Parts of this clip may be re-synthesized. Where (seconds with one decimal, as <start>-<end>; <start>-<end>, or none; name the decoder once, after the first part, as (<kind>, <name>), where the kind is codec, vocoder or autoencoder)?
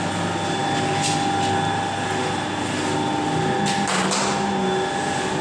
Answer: none